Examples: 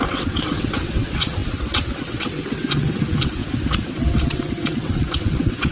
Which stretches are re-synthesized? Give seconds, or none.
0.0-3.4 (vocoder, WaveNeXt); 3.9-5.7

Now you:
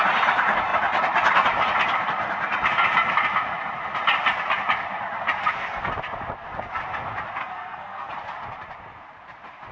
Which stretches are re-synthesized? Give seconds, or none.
5.4-5.9 (codec, SNAC); 7.4-8.1

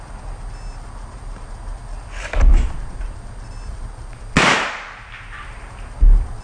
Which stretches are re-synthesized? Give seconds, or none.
none

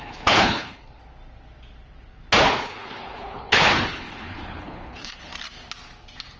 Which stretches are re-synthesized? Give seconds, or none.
0.0-1.0 (codec, HILCodec); 2.6-5.3

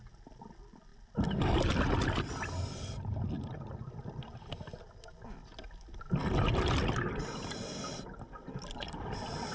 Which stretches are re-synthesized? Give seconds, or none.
none

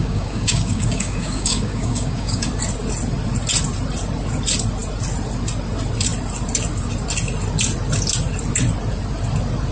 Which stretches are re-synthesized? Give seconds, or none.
0.0-2.5 (codec, DAC)

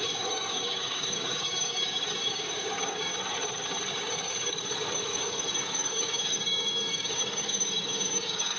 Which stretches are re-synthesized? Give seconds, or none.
0.0-3.1 (codec, DAC); 3.9-8.6

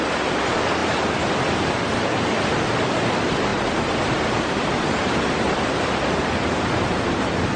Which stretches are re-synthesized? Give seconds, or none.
0.8-1.7 (vocoder, BigVGAN v2); 3.5-7.6